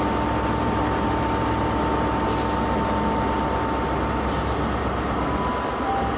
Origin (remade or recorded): recorded